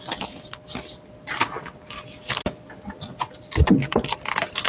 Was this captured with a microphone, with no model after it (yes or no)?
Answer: yes